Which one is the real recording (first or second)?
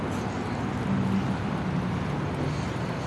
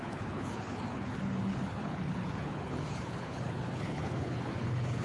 first